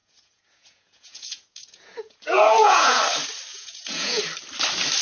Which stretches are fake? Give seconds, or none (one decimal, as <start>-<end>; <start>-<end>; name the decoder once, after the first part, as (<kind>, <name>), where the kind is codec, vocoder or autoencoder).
0.0-3.0 (vocoder, Vocos); 3.5-4.2